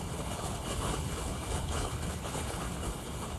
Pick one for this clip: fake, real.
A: fake